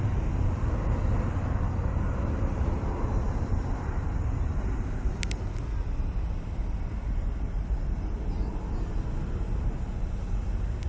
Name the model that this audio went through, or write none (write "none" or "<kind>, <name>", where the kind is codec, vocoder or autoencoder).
none